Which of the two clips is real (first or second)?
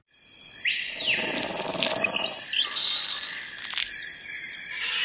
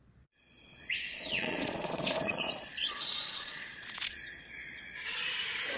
first